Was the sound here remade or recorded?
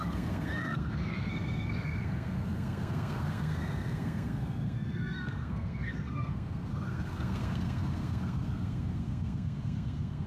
remade